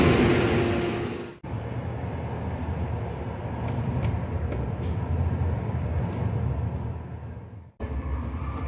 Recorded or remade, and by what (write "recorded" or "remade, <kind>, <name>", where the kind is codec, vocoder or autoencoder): recorded